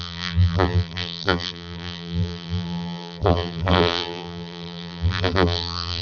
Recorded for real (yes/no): no